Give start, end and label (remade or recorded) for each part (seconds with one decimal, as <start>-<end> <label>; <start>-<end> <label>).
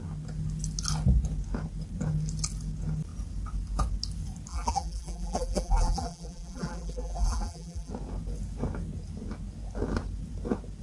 0.0-4.5 recorded; 4.5-7.9 remade; 7.9-10.8 recorded